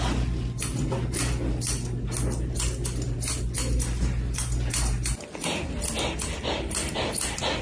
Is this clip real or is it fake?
real